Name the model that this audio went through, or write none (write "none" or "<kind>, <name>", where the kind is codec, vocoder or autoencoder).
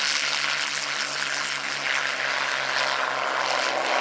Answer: none